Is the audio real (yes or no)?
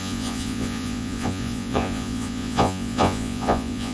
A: no